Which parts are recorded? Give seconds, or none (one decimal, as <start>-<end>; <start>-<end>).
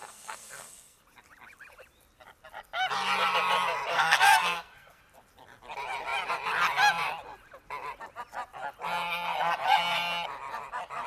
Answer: 1.0-3.9; 5.0-11.1